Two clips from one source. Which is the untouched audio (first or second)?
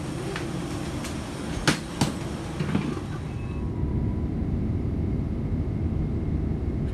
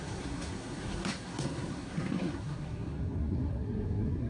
first